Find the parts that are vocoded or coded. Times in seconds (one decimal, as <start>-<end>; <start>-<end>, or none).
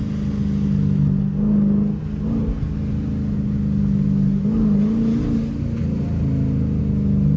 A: none